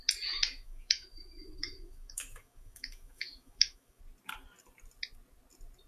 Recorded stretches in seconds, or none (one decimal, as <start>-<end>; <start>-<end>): 0.0-0.5; 4.0-5.9